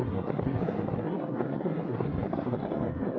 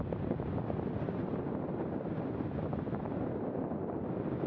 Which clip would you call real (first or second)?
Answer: second